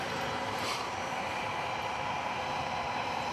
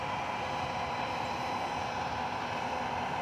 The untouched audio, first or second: second